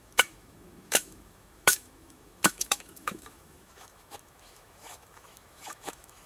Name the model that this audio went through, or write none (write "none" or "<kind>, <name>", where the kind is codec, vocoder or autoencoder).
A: autoencoder, DAC-VAE